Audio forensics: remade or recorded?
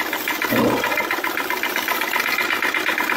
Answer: recorded